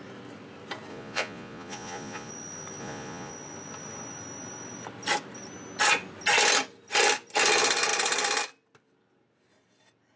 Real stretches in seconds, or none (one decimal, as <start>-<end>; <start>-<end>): 0.0-0.9; 2.3-2.8; 3.3-10.2